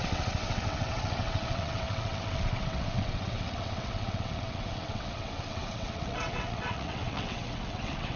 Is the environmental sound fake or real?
fake